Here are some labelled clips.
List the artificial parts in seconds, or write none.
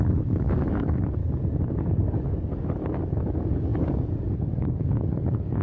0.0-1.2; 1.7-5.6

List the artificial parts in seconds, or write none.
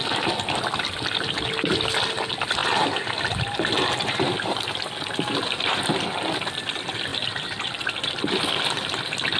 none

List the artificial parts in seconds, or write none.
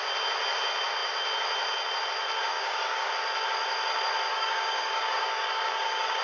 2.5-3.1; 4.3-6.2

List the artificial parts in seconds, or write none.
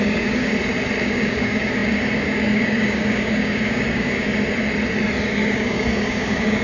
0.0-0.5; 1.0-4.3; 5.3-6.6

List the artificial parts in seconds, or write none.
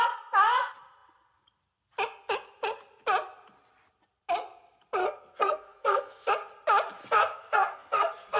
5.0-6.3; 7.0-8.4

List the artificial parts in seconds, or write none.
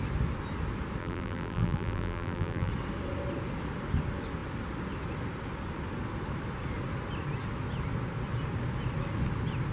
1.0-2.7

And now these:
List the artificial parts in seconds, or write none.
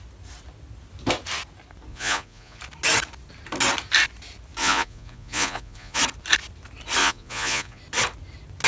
1.9-2.6; 4.6-6.0; 7.0-7.8